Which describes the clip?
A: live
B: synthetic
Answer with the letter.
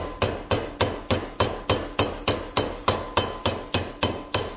A